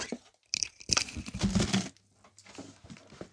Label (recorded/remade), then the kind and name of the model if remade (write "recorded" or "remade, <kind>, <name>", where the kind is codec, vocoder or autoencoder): recorded